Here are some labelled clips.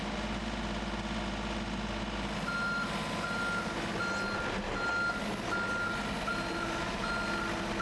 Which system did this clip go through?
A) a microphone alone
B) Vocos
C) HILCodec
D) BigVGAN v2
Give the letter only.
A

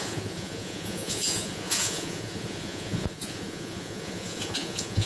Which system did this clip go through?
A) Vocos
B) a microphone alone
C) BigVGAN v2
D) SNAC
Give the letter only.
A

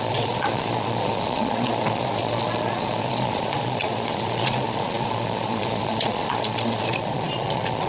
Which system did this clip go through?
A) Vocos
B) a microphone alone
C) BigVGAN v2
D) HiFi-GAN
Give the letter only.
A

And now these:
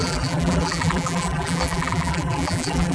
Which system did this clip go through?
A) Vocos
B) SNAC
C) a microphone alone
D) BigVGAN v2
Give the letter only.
D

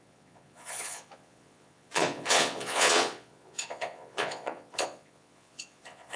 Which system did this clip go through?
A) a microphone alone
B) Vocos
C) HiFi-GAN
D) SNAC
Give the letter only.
B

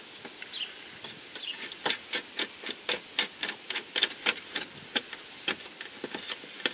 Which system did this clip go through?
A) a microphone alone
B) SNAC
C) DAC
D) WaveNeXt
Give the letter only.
A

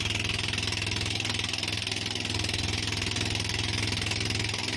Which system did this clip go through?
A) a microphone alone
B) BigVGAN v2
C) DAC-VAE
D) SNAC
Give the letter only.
A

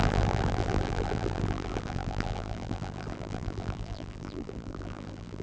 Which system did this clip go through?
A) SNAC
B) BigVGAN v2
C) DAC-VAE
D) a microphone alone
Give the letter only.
B